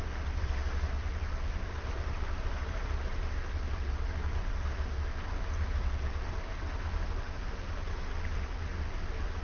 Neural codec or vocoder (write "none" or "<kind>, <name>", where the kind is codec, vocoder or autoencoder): none